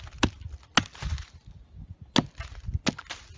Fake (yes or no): no